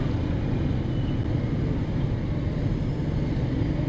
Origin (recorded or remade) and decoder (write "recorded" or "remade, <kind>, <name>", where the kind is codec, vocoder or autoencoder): recorded